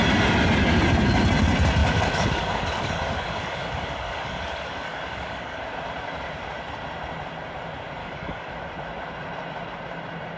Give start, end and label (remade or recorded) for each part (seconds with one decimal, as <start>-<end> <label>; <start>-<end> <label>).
0.0-1.8 recorded; 1.8-5.6 remade; 5.6-8.0 recorded; 8.0-8.5 remade; 8.5-10.4 recorded